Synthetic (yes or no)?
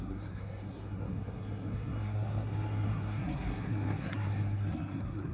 yes